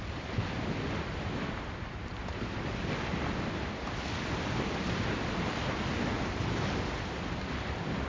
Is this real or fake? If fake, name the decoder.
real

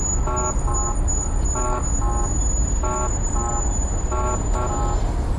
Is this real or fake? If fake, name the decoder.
real